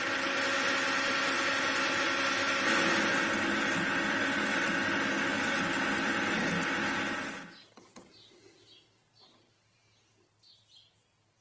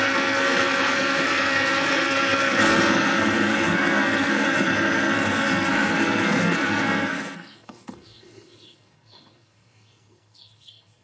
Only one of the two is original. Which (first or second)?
first